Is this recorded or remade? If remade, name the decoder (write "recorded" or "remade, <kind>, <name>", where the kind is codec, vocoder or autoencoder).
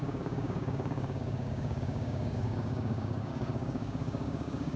remade, codec, DAC